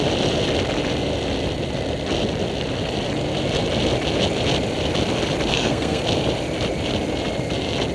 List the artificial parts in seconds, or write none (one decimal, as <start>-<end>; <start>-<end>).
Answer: 5.5-6.0